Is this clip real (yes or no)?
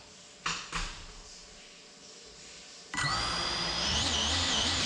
yes